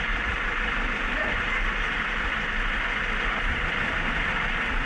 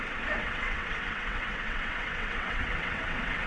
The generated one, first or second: second